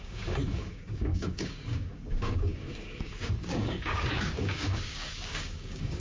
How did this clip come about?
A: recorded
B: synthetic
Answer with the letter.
B